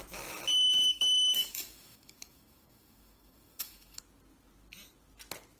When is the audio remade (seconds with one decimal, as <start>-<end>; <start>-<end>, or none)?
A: 0.6-4.0